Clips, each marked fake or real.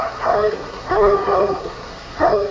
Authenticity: fake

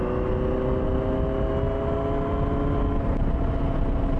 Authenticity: real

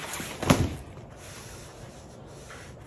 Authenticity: real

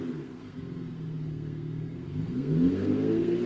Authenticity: fake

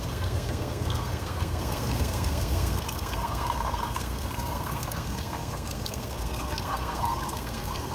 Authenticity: fake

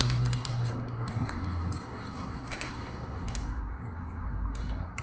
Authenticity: fake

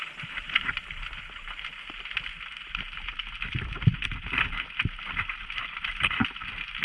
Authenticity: real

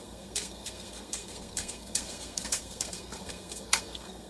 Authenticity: fake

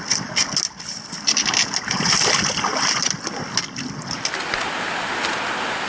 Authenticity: real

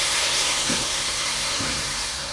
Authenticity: fake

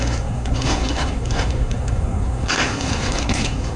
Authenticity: fake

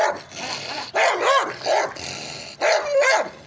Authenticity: real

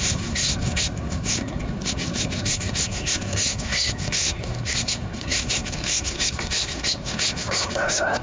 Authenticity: fake